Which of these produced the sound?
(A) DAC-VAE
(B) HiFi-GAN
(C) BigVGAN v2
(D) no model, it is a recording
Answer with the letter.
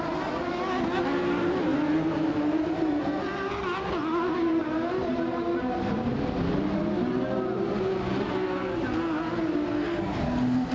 D